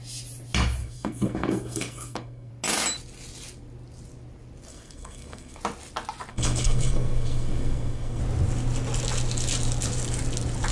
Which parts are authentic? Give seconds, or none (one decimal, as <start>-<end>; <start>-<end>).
0.0-0.8; 2.5-4.7; 5.6-6.3; 8.2-10.7